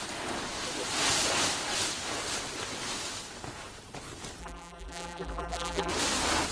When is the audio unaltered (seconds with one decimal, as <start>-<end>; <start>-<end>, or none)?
0.0-4.4; 5.9-6.5